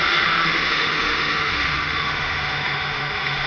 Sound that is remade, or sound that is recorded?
remade